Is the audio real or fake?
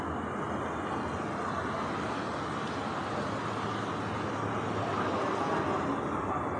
real